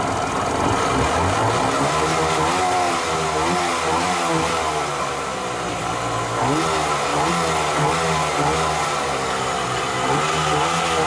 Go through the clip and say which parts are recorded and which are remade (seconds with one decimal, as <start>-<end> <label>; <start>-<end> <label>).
0.0-11.1 recorded